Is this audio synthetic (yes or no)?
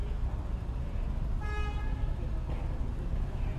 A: no